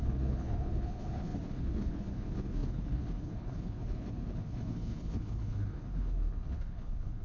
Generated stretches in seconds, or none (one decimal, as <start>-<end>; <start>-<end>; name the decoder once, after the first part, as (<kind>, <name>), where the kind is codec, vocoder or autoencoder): 0.0-7.2 (codec, HILCodec)